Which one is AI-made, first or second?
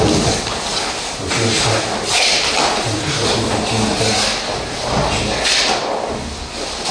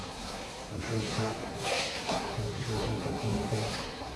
second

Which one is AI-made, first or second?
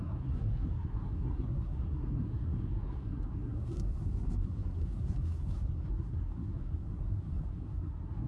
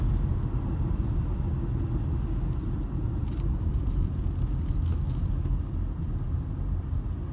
first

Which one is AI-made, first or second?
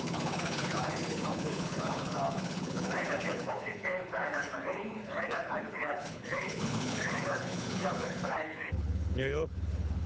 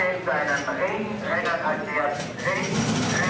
first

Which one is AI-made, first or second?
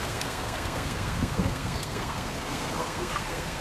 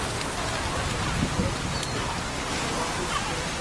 first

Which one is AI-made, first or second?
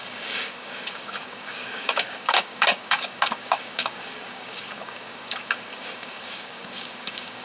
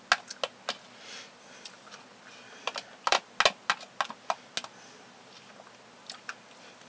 first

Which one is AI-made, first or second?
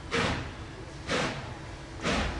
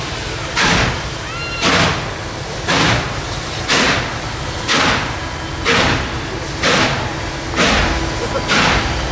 first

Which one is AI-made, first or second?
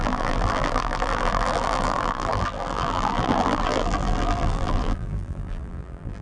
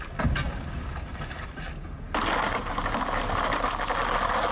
first